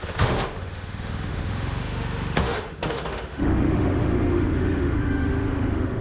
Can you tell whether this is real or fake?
fake